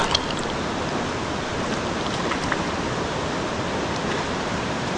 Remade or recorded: recorded